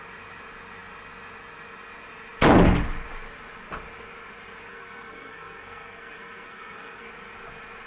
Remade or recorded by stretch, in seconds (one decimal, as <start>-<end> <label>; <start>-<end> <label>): 0.0-4.7 recorded; 4.7-7.1 remade; 7.1-7.9 recorded